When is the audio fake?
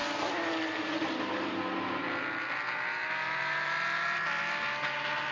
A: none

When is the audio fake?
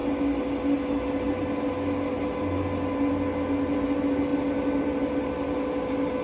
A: none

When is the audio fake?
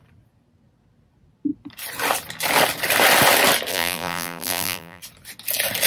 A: 3.7-5.0 (vocoder, BigVGAN v2)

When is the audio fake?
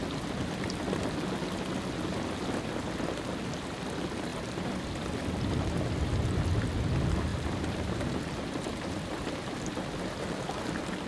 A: 7.3-7.9 (vocoder, BigVGAN v2); 8.7-9.7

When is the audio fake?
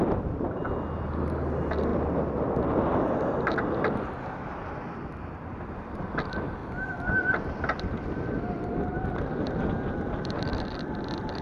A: 1.9-3.8 (vocoder, BigVGAN v2)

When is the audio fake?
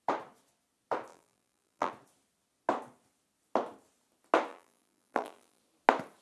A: 1.1-1.9 (vocoder, BigVGAN v2); 4.5-5.6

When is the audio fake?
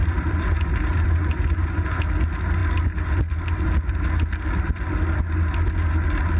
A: 0.0-2.0 (vocoder, BigVGAN v2)